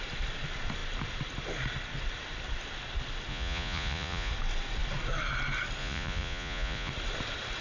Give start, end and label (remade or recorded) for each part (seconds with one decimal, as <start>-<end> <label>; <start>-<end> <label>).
0.0-3.3 recorded; 3.3-4.3 remade; 4.3-5.8 recorded; 5.8-6.9 remade; 6.9-7.6 recorded